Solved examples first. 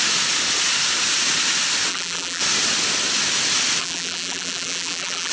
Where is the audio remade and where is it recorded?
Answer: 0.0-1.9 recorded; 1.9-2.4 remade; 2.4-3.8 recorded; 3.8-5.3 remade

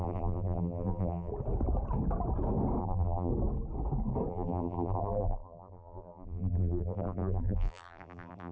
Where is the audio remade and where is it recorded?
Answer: 0.0-1.3 remade; 1.3-2.8 recorded; 2.8-3.3 remade; 3.3-4.3 recorded; 4.3-8.5 remade

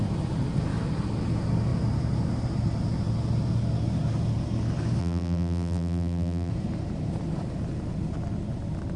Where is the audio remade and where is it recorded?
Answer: 0.0-5.0 recorded; 5.0-6.5 remade; 6.5-9.0 recorded

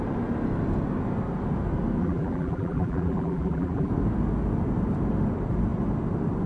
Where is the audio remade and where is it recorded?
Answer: 0.0-2.0 recorded; 2.0-3.9 remade; 3.9-6.5 recorded

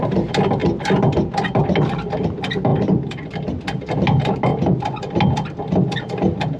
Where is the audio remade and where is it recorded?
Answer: 0.0-2.7 recorded; 2.7-3.6 remade; 3.6-6.6 recorded

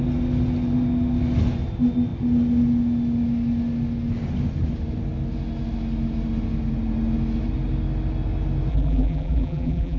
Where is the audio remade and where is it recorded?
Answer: 0.0-8.7 recorded; 8.7-10.0 remade